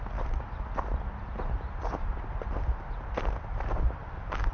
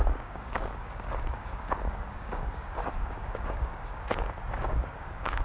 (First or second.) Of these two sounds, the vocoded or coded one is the second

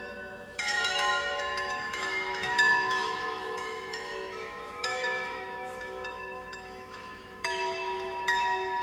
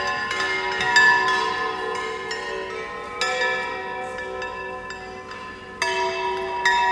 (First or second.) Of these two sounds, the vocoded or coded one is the first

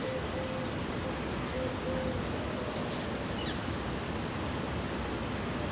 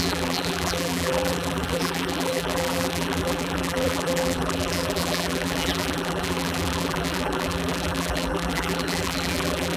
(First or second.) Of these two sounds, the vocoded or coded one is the second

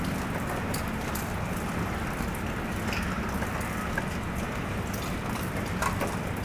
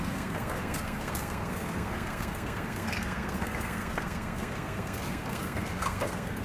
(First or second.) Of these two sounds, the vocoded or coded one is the second